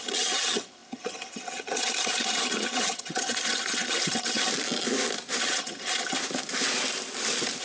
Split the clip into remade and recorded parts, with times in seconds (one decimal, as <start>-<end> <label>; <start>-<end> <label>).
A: 0.0-4.5 remade; 4.5-5.4 recorded; 5.4-6.2 remade; 6.2-7.6 recorded